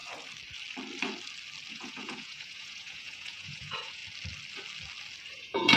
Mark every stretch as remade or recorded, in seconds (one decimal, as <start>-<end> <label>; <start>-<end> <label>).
0.0-1.7 recorded; 1.7-4.0 remade; 4.0-5.3 recorded; 5.3-5.8 remade

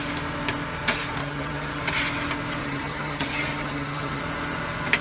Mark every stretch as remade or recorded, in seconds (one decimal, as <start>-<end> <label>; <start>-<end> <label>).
0.0-1.2 recorded; 1.2-1.8 remade; 1.8-2.6 recorded; 2.6-4.2 remade; 4.2-5.0 recorded